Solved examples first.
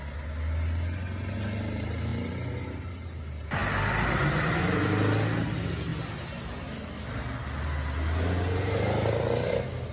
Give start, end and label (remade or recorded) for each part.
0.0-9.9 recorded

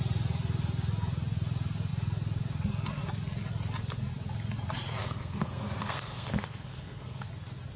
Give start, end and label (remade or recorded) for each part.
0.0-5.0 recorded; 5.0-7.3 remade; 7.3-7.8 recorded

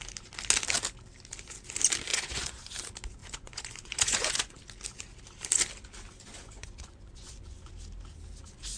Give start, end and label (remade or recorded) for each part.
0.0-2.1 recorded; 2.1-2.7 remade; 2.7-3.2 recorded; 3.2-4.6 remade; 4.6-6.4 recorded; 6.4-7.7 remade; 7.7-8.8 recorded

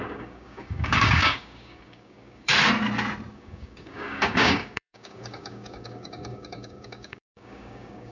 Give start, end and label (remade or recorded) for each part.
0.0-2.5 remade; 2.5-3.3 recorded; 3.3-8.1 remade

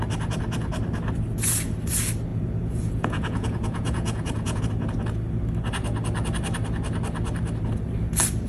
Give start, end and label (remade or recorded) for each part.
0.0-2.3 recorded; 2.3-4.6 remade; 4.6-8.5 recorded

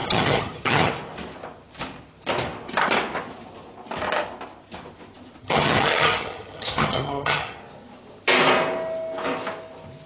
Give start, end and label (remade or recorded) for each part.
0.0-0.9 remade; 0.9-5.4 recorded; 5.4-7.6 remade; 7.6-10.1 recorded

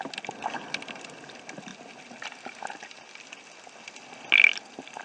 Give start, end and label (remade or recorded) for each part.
0.0-5.0 recorded

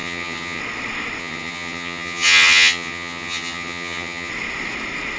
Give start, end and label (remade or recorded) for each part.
0.0-0.6 remade; 0.6-1.2 recorded; 1.2-4.3 remade; 4.3-5.2 recorded